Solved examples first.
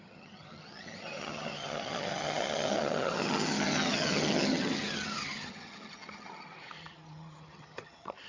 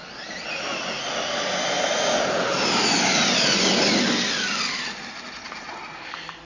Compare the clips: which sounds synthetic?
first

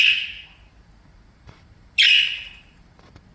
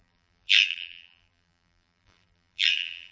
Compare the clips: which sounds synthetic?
second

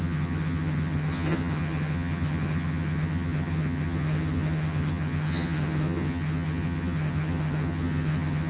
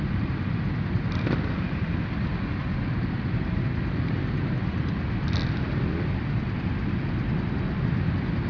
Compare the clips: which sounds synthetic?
first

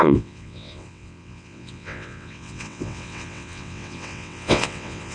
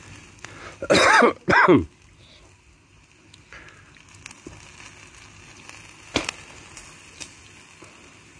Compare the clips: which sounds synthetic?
first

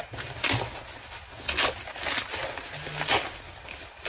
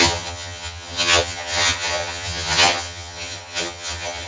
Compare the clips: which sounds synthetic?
second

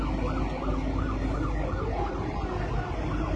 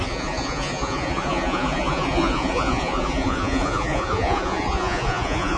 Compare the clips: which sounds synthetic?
second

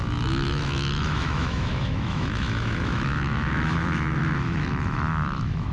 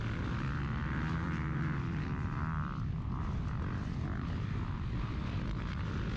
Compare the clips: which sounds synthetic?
first